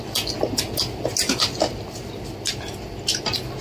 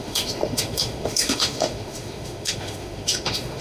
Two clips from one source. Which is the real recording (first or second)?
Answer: first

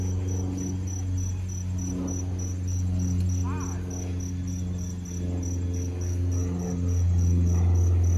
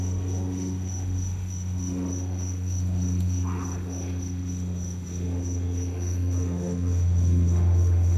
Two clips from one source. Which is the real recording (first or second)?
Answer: first